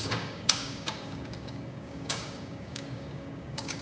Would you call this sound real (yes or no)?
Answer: no